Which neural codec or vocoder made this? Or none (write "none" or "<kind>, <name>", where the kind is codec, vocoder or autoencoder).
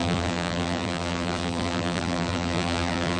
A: vocoder, BigVGAN v2